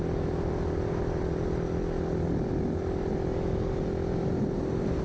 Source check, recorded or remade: recorded